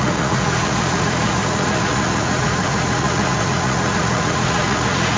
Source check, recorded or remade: remade